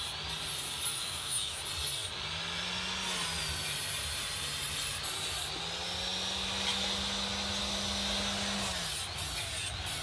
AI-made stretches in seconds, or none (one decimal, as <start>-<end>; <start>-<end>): 1.0-1.6

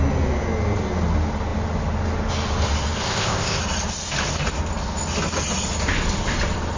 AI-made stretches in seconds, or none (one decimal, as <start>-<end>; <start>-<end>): 3.0-3.6

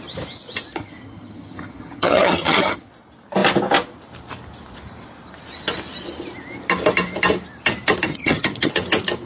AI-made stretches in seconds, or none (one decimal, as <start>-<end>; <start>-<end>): 0.7-2.9; 8.1-8.7

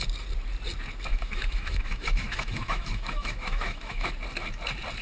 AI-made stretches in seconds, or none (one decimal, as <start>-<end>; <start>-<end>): 1.1-4.1

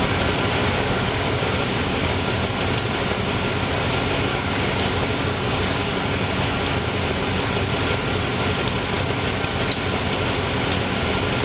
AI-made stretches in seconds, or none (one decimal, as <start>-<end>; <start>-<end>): 0.6-2.3; 4.3-6.6

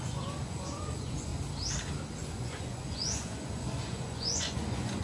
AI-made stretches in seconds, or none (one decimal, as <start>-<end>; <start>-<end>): 0.0-1.3; 2.2-5.0

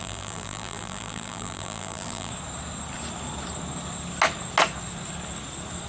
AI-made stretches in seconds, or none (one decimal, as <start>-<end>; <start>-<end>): 0.0-2.3

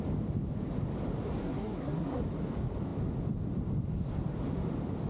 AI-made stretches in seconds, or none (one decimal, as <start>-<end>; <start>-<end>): 1.4-2.2